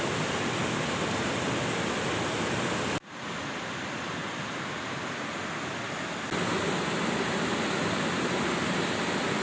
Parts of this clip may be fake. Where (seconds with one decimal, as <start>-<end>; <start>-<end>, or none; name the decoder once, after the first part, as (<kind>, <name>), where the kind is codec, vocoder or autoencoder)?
none